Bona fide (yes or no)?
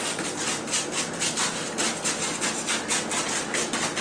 yes